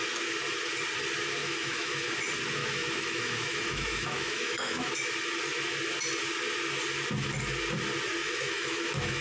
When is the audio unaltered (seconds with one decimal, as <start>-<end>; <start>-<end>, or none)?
0.0-1.4; 2.1-2.6; 4.9-8.2